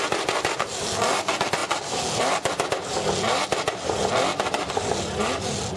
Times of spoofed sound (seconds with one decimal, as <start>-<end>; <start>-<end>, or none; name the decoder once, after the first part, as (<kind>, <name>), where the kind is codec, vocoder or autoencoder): none